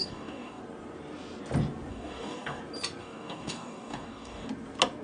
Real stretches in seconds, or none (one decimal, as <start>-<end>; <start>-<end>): 0.6-1.9; 2.6-3.0; 4.5-5.0